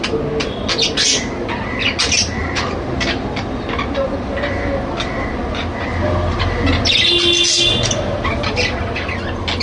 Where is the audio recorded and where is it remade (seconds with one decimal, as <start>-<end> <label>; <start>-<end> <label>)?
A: 0.0-9.6 recorded